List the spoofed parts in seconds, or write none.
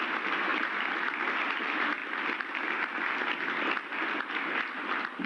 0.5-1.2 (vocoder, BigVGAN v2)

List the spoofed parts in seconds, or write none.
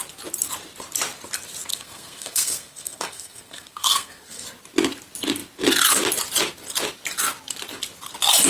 1.7-4.4 (codec, SNAC)